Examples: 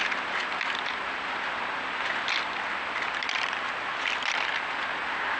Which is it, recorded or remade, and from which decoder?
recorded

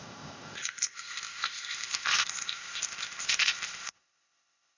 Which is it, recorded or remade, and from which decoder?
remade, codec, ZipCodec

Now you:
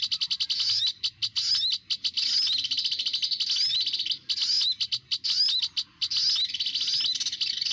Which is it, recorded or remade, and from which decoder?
recorded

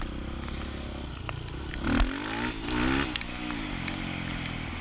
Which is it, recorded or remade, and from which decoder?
recorded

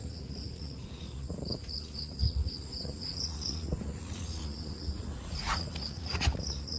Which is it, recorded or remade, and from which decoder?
remade, vocoder, Vocos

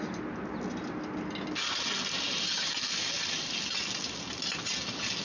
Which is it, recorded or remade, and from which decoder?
recorded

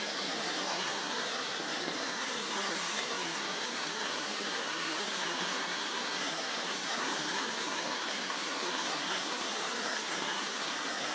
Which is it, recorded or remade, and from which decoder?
remade, codec, SNAC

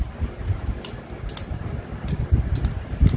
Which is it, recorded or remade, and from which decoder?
recorded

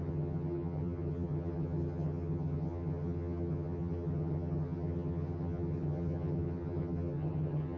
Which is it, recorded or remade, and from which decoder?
remade, vocoder, HiFi-GAN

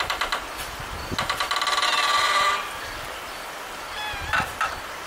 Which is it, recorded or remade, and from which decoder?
recorded